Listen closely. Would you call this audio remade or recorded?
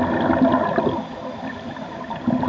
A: recorded